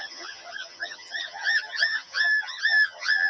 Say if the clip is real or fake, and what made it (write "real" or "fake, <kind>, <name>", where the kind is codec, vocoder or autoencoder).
fake, vocoder, HiFi-GAN